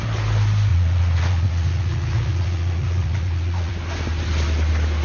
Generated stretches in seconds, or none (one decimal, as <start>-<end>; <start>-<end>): 0.7-3.7